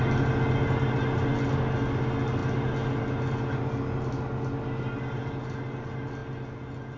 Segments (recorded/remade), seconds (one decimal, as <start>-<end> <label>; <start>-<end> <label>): 0.0-7.0 recorded